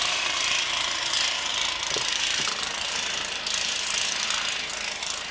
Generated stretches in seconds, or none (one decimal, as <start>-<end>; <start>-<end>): none